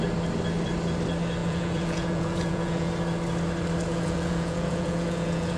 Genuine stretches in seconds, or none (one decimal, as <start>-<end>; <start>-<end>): 0.0-1.4; 2.9-3.9